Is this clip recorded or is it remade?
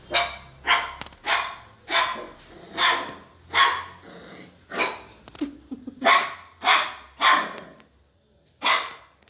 recorded